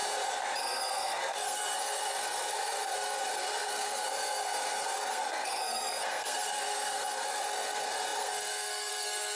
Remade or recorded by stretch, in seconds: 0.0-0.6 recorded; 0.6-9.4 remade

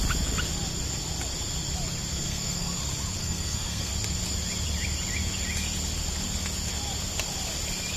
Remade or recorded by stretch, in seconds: 0.0-2.1 recorded; 2.1-2.8 remade; 2.8-3.2 recorded; 3.2-3.9 remade; 3.9-8.0 recorded

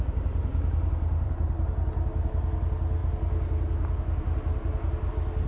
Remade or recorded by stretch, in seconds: 0.0-0.5 recorded; 0.5-1.3 remade; 1.3-5.5 recorded

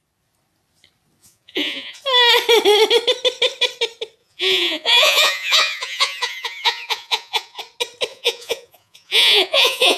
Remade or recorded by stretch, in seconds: 0.0-1.2 recorded; 1.2-2.0 remade; 2.0-4.2 recorded; 4.2-7.6 remade; 7.6-8.1 recorded; 8.1-10.0 remade

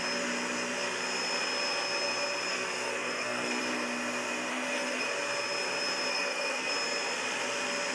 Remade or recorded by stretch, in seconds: 0.0-2.5 recorded; 2.5-3.6 remade; 3.6-4.5 recorded; 4.5-5.0 remade; 5.0-6.1 recorded; 6.1-6.7 remade; 6.7-7.9 recorded

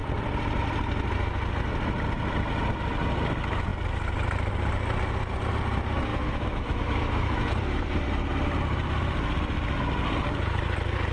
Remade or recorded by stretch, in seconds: 0.0-6.1 recorded; 6.1-7.5 remade; 7.5-11.1 recorded

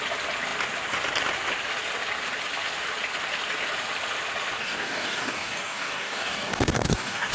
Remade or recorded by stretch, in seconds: 0.0-4.6 recorded; 4.6-7.3 remade